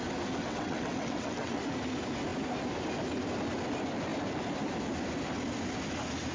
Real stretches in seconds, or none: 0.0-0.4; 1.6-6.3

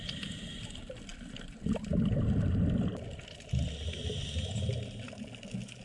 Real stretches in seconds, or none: 0.0-5.8

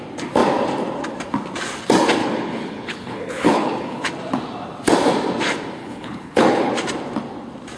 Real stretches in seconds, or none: 0.0-2.2; 4.1-5.8; 6.7-7.8